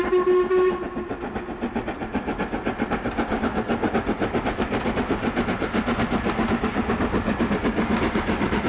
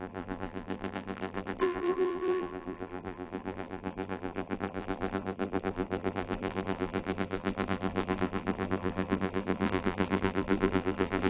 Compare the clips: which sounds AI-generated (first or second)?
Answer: second